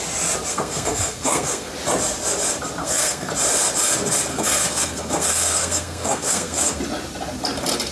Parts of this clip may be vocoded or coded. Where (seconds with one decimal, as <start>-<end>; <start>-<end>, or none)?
0.5-1.7; 2.8-3.3; 4.3-6.8

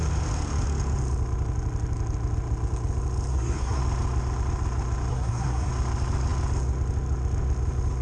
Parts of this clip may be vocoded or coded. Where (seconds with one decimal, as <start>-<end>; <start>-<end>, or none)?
3.3-3.8; 5.1-5.7

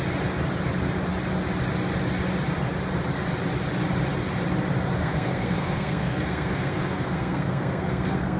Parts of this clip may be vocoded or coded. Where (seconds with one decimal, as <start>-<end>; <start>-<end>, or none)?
5.0-8.4

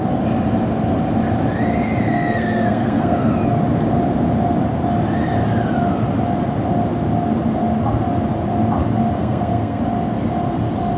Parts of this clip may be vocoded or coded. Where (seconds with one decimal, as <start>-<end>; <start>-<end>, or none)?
2.1-3.3; 9.2-9.8

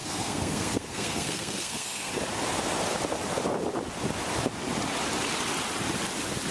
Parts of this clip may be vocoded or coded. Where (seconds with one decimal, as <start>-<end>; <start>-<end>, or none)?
0.0-2.1